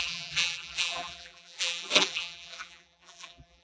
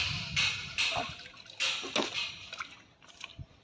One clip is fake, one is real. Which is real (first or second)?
second